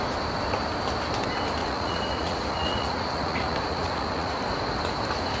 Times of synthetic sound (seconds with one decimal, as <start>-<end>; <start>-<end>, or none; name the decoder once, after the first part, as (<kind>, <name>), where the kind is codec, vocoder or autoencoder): 1.6-4.4 (vocoder, Vocos)